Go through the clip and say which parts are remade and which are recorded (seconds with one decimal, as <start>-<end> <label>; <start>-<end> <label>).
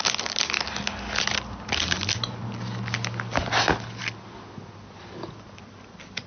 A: 0.0-6.3 recorded